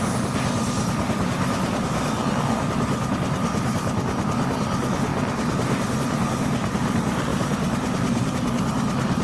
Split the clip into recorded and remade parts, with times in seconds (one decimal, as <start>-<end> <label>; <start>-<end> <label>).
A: 0.0-5.1 recorded; 5.1-6.0 remade; 6.0-7.3 recorded; 7.3-8.3 remade; 8.3-9.2 recorded